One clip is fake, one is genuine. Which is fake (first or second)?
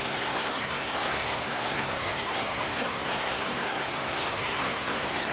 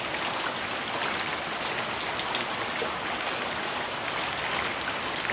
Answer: first